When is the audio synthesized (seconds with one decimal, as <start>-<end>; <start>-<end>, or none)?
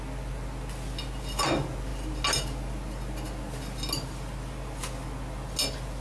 none